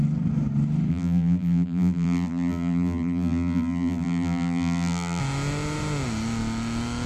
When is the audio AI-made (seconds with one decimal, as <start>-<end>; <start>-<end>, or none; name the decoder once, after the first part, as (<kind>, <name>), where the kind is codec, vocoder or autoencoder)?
0.9-5.2 (vocoder, BigVGAN v2)